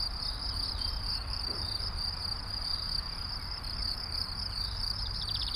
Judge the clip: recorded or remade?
remade